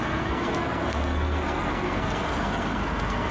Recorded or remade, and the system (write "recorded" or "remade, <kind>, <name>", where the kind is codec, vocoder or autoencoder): remade, codec, SNAC